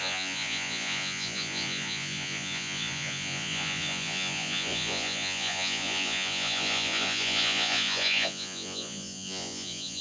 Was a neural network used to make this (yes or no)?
yes